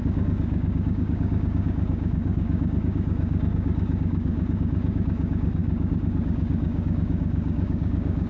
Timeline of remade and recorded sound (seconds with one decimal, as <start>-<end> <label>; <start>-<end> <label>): 0.0-8.3 remade